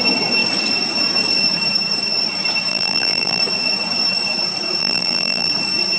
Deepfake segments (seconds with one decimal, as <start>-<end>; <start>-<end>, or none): 2.7-3.4; 4.8-5.5